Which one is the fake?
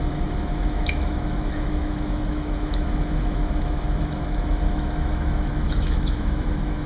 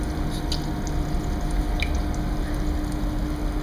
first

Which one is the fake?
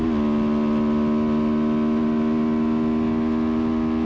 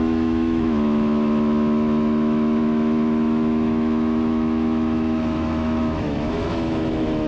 second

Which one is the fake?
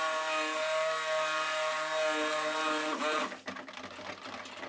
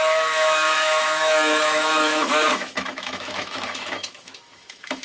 second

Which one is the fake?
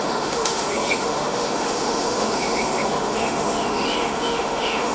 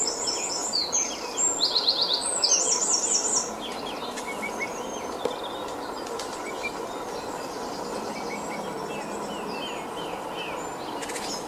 first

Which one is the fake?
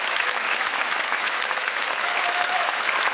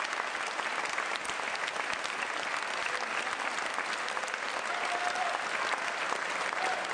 first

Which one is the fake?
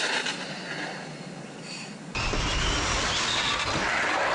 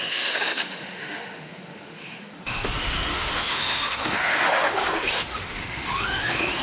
second